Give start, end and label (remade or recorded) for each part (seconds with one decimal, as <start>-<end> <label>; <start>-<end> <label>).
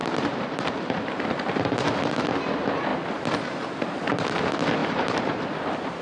0.0-2.1 remade; 2.1-4.8 recorded; 4.8-5.3 remade; 5.3-6.0 recorded